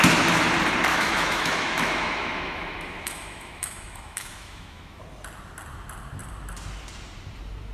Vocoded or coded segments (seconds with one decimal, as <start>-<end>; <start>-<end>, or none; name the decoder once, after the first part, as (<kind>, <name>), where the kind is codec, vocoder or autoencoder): 0.9-5.0 (autoencoder, DAC-VAE)